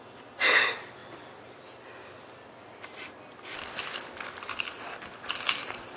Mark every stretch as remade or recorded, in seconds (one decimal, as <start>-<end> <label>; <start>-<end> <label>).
0.0-6.0 recorded